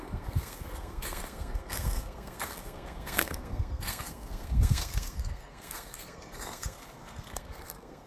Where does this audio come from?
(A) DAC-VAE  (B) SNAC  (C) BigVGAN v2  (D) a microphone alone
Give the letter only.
B